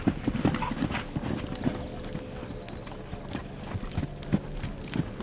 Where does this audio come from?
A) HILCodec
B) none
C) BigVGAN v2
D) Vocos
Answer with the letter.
B